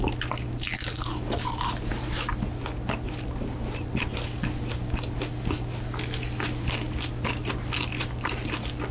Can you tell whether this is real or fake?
real